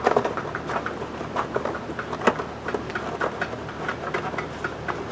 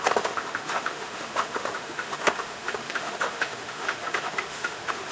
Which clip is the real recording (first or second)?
first